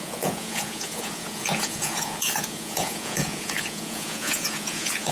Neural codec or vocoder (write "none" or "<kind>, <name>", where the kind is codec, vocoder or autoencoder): vocoder, Vocos